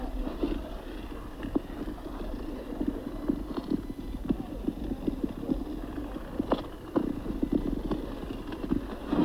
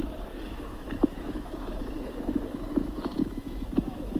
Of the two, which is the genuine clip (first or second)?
first